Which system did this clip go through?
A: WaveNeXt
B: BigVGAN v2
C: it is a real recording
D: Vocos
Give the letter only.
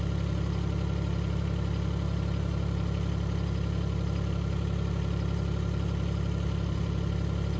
C